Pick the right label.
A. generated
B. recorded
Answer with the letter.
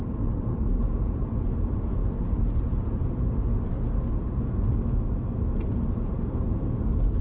B